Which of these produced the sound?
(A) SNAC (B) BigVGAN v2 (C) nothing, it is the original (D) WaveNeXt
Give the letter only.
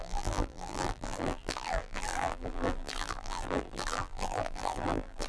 B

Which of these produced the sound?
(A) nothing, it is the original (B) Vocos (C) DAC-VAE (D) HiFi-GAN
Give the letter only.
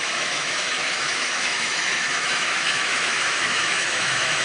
C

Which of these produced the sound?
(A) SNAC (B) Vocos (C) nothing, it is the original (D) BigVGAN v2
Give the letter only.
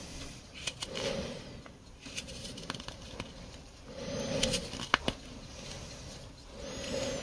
C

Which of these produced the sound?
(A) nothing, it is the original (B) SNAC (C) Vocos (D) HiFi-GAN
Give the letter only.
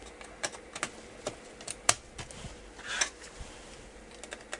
A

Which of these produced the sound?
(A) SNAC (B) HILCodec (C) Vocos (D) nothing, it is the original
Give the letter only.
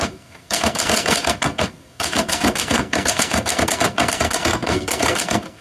A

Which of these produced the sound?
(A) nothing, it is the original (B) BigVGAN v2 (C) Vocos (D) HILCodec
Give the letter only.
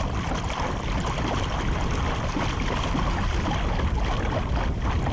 A